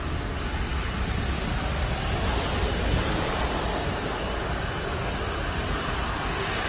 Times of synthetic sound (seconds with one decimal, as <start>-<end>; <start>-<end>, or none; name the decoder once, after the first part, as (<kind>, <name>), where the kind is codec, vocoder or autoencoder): none